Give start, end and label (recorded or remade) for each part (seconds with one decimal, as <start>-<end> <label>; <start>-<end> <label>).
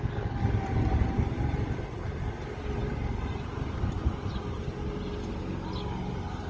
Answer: 0.0-6.5 recorded